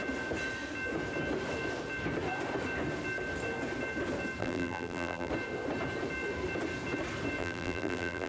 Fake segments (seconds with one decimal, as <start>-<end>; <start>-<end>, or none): 4.4-5.3; 7.4-8.3